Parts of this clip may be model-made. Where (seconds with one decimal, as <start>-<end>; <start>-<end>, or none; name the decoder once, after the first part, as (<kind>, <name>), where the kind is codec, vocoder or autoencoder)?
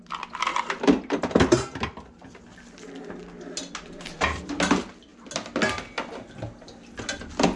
none